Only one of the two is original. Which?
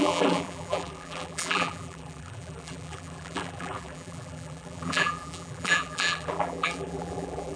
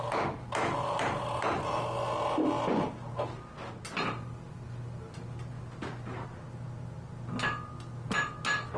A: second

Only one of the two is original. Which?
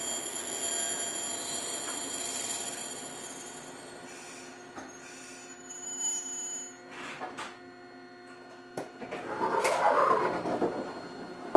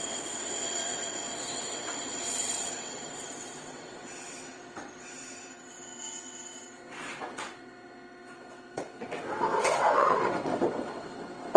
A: first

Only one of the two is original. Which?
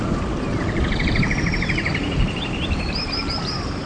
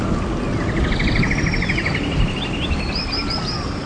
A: second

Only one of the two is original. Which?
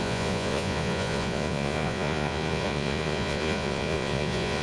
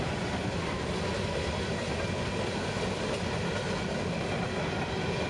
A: second